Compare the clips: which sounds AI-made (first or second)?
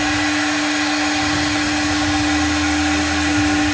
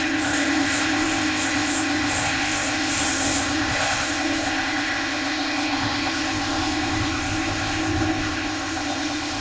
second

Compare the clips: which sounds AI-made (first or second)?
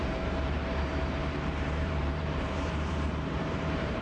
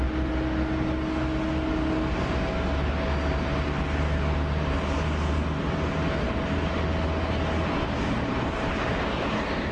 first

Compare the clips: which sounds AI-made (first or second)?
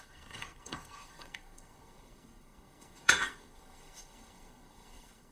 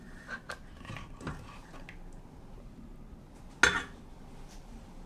first